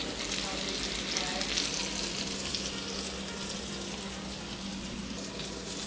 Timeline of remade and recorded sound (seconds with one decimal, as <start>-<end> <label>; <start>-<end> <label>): 0.0-5.9 recorded